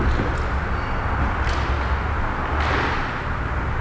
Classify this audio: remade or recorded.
recorded